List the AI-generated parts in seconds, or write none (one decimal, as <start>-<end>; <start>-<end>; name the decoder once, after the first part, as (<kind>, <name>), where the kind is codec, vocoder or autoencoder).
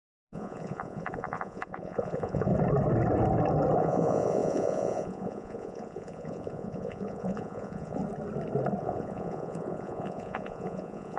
0.0-2.5 (vocoder, Vocos); 3.8-8.0; 8.8-11.2